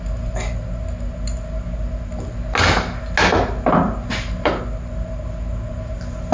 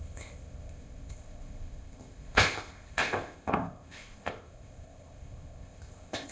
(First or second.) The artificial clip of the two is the second